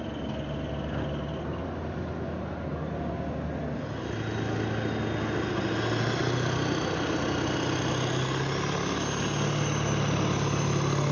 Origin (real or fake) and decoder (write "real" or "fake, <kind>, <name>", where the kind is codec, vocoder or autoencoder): real